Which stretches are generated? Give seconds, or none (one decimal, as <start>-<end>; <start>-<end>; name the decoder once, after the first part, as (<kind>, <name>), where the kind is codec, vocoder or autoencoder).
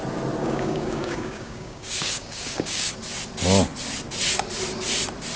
0.4-2.9 (codec, DAC)